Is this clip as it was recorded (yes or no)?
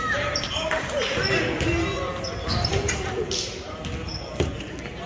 yes